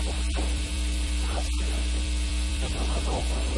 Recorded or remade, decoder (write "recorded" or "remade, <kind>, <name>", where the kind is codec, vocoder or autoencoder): remade, vocoder, BigVGAN v2